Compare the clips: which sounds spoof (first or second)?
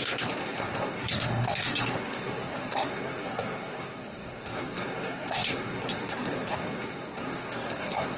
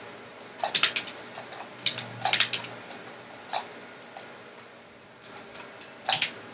first